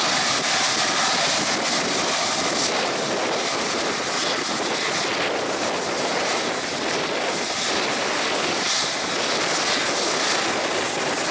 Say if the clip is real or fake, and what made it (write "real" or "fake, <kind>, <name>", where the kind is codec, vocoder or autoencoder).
real